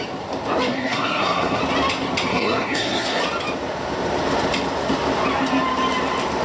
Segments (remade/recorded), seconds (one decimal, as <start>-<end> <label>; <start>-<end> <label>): 0.0-0.7 recorded; 0.7-1.6 remade; 1.6-2.3 recorded; 2.3-3.2 remade; 3.2-6.4 recorded